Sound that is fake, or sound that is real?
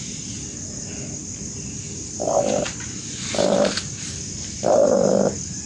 real